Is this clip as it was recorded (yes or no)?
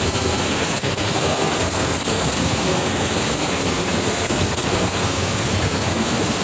no